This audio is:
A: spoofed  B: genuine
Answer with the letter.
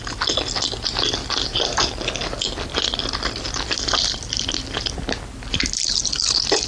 B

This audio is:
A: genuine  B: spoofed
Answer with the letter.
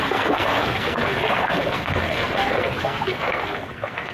B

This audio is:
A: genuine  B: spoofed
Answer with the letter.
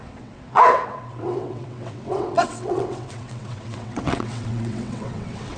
B